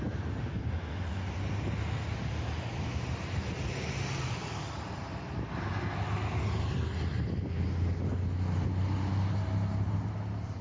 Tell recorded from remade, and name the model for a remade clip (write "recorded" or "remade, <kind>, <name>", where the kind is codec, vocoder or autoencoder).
recorded